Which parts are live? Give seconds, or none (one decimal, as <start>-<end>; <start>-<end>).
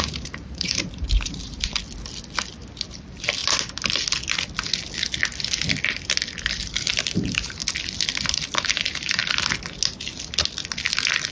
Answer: 1.7-2.9; 3.4-6.4; 7.6-8.3; 9.2-11.3